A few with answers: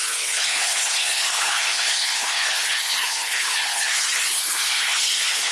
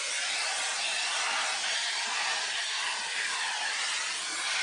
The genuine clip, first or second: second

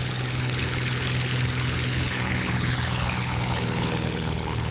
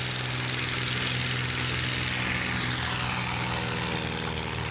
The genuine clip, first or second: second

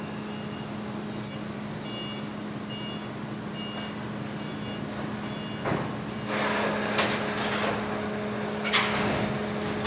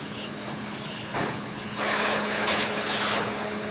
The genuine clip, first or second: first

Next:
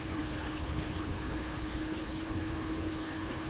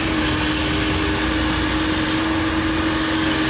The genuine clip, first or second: second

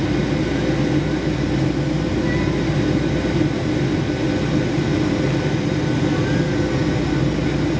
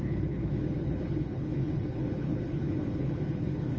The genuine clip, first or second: first